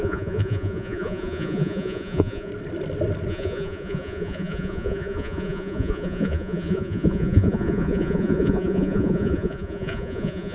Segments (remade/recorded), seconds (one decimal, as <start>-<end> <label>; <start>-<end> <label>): 0.0-2.5 remade; 2.5-3.3 recorded; 3.3-10.5 remade